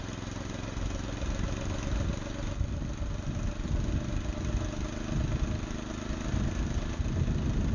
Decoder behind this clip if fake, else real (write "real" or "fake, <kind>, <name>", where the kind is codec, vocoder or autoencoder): real